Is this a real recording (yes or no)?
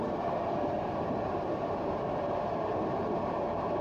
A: no